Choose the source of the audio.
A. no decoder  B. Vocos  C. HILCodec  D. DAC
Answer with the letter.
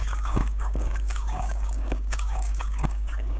D